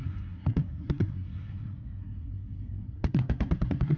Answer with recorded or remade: remade